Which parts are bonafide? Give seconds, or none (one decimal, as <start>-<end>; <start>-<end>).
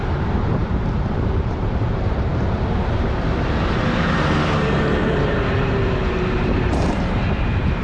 none